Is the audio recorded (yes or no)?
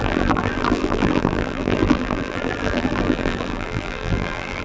no